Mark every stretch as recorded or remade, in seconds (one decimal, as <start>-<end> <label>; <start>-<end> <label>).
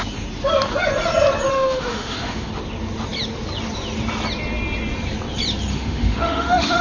0.0-1.5 recorded; 1.5-2.5 remade; 2.5-5.7 recorded; 5.7-6.8 remade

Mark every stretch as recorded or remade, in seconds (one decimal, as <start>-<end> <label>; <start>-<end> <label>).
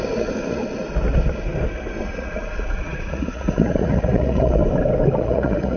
0.0-0.6 remade; 0.6-2.0 recorded; 2.0-4.6 remade; 4.6-5.2 recorded; 5.2-5.8 remade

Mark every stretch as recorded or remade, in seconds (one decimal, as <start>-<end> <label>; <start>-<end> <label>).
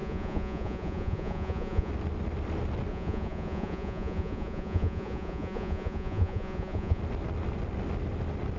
0.0-1.9 remade; 1.9-2.9 recorded; 2.9-7.0 remade; 7.0-8.6 recorded